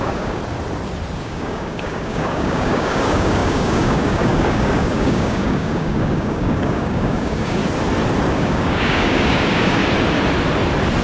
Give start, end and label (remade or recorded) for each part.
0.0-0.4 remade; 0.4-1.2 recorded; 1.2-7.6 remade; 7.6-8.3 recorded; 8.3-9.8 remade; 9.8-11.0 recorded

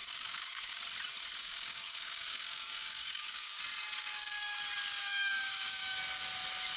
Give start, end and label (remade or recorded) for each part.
0.0-0.8 remade; 0.8-1.4 recorded; 1.4-3.6 remade; 3.6-4.0 recorded; 4.0-4.6 remade; 4.6-5.0 recorded; 5.0-6.0 remade; 6.0-6.8 recorded

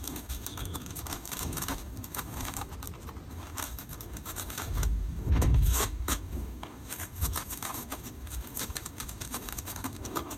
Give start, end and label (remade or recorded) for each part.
0.0-2.7 remade; 2.7-3.3 recorded; 3.3-10.4 remade

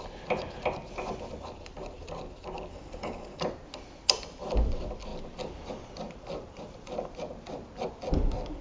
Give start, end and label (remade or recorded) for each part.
0.0-2.7 recorded; 2.7-3.4 remade; 3.4-8.6 recorded

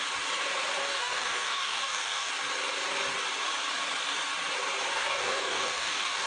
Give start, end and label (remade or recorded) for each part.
0.0-0.8 recorded; 0.8-2.3 remade; 2.3-4.9 recorded; 4.9-6.3 remade

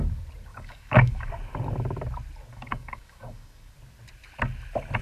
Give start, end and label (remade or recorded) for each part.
0.0-0.5 recorded; 0.5-1.3 remade; 1.3-2.5 recorded; 2.5-3.7 remade; 3.7-5.0 recorded

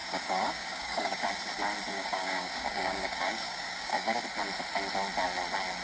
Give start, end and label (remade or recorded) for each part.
0.0-1.3 remade; 1.3-1.9 recorded; 1.9-4.2 remade; 4.2-5.8 recorded